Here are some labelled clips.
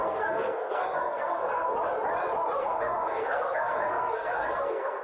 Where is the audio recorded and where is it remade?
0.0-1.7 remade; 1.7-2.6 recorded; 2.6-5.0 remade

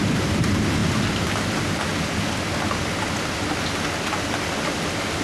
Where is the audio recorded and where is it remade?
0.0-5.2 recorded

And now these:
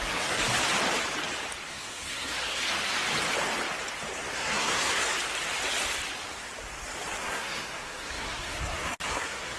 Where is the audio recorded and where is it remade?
0.0-0.4 remade; 0.4-1.7 recorded; 1.7-2.6 remade; 2.6-4.3 recorded; 4.3-5.0 remade; 5.0-7.2 recorded; 7.2-9.6 remade

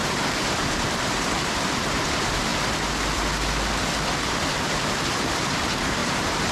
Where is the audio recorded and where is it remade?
0.0-2.5 remade; 2.5-4.3 recorded; 4.3-6.5 remade

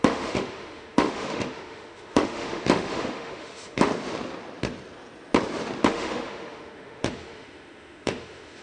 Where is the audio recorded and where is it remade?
0.0-3.9 remade; 3.9-5.9 recorded; 5.9-8.6 remade

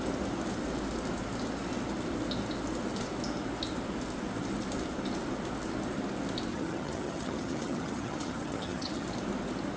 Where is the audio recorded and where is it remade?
0.0-6.5 recorded; 6.5-9.1 remade; 9.1-9.8 recorded